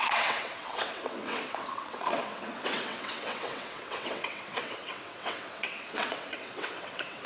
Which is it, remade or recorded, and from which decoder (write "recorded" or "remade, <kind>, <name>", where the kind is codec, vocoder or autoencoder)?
remade, vocoder, WaveNeXt